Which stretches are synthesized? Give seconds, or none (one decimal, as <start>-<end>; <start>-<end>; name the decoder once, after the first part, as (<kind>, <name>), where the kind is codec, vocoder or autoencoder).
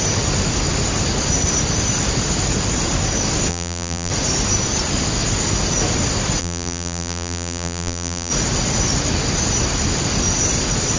3.5-4.1 (vocoder, BigVGAN v2); 6.4-8.3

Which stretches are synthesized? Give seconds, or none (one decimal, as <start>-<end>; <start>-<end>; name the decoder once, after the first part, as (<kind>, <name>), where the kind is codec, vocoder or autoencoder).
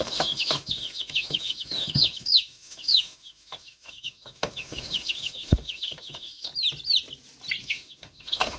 0.0-6.5 (autoencoder, DAC-VAE); 7.6-8.6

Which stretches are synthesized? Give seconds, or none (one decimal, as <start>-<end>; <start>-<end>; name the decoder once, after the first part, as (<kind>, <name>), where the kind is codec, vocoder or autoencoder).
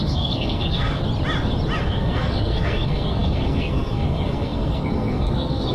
0.0-1.0 (codec, SNAC); 1.8-5.7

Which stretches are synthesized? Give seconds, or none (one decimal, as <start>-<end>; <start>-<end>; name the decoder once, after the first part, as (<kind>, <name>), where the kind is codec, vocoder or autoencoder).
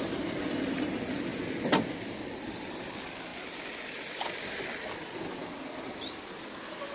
5.4-6.1 (vocoder, BigVGAN v2)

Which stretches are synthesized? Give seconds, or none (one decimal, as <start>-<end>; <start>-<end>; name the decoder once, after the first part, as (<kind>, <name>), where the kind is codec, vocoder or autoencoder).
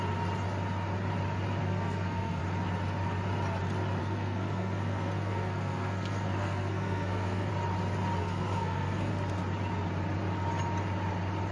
1.6-2.4 (codec, SNAC); 4.0-7.5; 8.2-9.1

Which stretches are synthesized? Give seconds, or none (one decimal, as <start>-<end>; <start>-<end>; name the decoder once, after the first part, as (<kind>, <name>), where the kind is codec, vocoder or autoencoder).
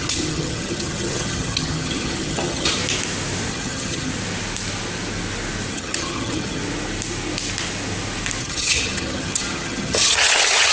0.0-2.8 (vocoder, HiFi-GAN); 3.5-4.1; 5.7-6.6; 8.4-10.7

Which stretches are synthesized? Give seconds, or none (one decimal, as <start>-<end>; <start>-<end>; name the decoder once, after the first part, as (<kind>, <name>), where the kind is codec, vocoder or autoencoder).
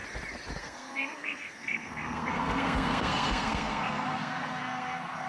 0.6-5.3 (codec, SNAC)